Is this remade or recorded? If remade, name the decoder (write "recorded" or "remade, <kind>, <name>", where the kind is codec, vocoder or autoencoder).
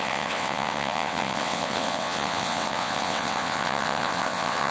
remade, vocoder, WaveNeXt